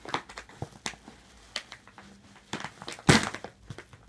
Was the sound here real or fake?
real